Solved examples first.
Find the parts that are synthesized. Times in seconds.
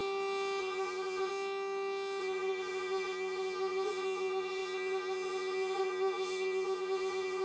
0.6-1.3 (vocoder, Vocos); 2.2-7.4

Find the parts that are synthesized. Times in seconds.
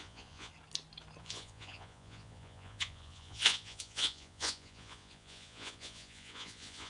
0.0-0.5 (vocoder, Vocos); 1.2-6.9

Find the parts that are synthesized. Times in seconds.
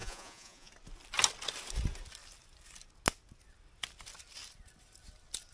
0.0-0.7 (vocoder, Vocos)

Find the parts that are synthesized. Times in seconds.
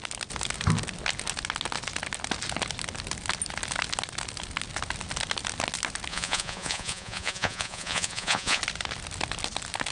6.1-8.6 (vocoder, Vocos)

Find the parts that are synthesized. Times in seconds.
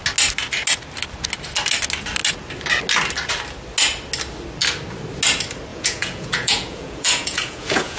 5.7-8.0 (vocoder, Vocos)